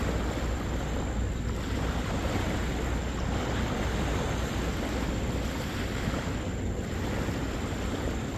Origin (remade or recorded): recorded